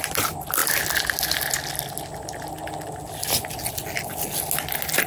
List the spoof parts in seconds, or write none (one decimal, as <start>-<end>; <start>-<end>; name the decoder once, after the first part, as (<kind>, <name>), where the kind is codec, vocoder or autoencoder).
none